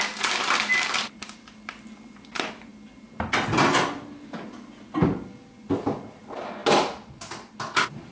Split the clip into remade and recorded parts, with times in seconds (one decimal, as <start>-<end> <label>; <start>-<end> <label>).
0.0-2.7 remade; 2.7-5.6 recorded; 5.6-6.6 remade; 6.6-7.1 recorded; 7.1-8.1 remade